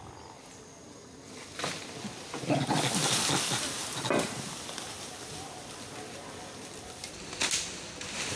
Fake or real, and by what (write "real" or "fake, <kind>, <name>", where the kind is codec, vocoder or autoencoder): real